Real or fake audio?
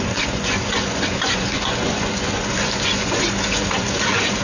fake